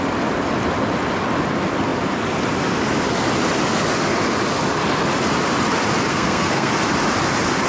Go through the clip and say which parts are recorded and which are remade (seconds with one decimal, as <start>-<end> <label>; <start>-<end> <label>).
0.0-6.1 recorded; 6.1-6.7 remade; 6.7-7.7 recorded